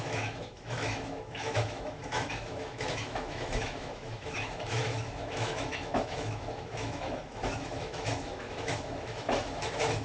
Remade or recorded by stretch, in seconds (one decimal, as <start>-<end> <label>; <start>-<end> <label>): 0.0-10.0 remade